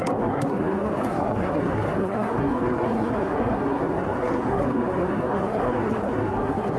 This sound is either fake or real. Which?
fake